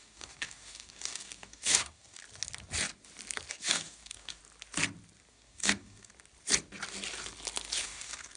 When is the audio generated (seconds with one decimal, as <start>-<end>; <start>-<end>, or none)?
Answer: 0.0-2.2; 3.5-4.4; 5.3-6.1; 7.8-8.4